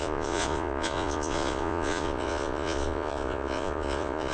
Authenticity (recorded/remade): remade